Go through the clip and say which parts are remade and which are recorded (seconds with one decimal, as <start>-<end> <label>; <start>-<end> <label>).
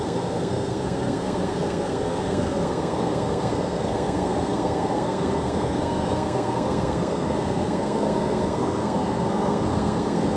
0.0-10.4 remade